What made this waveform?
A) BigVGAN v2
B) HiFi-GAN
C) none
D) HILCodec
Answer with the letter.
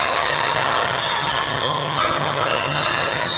B